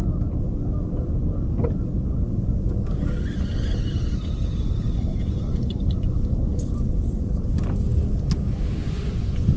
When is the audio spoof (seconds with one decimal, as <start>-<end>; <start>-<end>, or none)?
5.2-7.4; 8.8-9.6